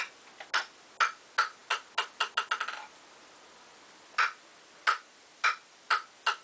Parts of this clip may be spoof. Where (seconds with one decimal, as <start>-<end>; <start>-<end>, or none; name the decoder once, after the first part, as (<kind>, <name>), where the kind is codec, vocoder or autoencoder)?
none